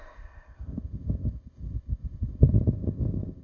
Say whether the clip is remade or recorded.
remade